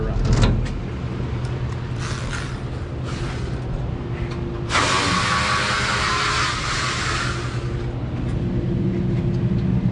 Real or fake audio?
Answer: real